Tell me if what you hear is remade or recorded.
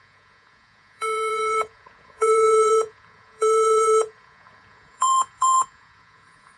remade